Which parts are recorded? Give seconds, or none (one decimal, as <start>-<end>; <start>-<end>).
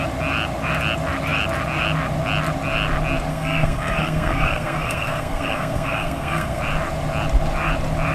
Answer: 0.0-3.3; 6.6-8.1